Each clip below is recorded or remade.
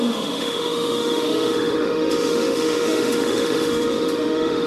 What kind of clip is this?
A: remade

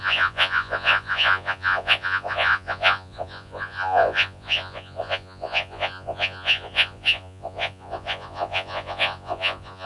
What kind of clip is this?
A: remade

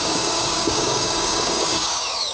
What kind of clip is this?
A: remade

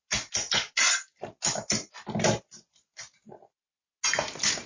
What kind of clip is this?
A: recorded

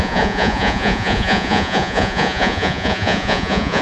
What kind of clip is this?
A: remade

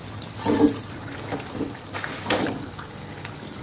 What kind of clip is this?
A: recorded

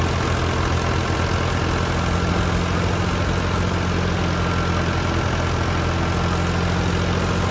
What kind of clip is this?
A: recorded